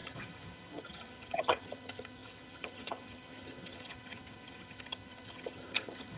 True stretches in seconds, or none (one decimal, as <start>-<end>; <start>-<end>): none